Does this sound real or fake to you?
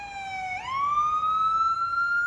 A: real